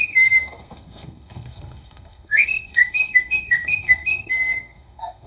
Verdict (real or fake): fake